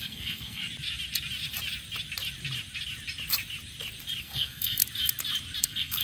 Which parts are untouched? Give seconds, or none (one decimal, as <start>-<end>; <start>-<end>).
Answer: 0.6-4.2; 4.8-5.6